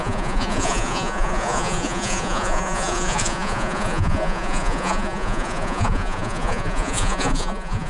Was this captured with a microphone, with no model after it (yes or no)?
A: no